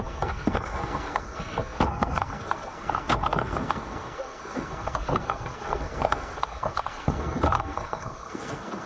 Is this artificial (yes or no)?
yes